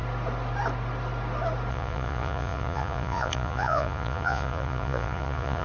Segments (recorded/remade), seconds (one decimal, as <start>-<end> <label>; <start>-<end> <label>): 0.0-1.7 recorded; 1.7-5.6 remade